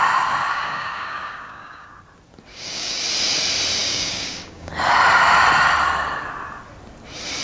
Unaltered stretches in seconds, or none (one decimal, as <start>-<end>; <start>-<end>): 0.0-0.5; 1.9-2.5; 3.0-3.8; 4.7-7.4